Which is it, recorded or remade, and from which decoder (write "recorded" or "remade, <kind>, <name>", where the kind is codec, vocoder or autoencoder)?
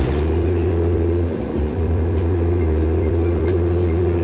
remade, vocoder, Vocos